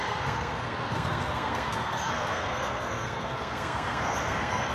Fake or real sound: fake